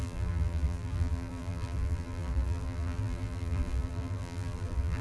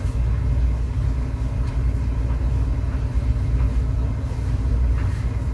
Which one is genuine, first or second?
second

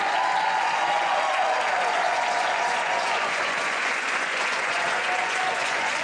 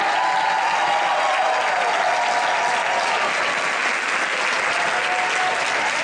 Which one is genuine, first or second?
second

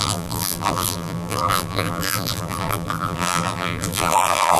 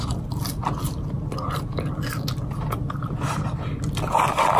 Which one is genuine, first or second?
second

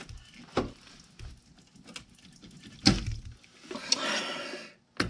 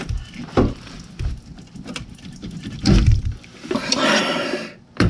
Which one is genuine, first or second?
first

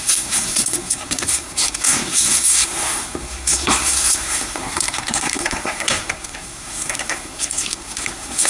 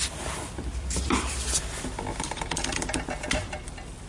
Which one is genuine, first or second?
second